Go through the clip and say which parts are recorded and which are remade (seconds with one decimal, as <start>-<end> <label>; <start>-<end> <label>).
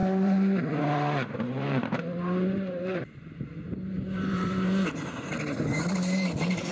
0.0-5.3 remade; 5.3-5.9 recorded; 5.9-6.7 remade